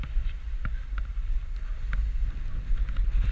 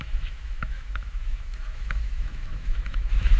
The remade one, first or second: second